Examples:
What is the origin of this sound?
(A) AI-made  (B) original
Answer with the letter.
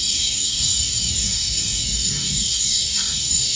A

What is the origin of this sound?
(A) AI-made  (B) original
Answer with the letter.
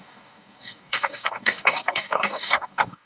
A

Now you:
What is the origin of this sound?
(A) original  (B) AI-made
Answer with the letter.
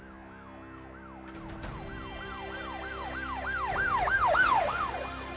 A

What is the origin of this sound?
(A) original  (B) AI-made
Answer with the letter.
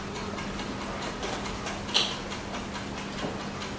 A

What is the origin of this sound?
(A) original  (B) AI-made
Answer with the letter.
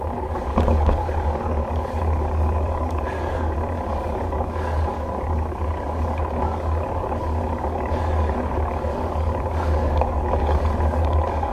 B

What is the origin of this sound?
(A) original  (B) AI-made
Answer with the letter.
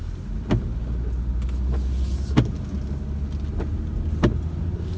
A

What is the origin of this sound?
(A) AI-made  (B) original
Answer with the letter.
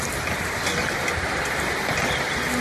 B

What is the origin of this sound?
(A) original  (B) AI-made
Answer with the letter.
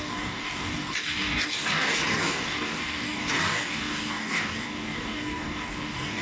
B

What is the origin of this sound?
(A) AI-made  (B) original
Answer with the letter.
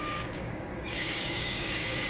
A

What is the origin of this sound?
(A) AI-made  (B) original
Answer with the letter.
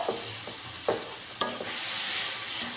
B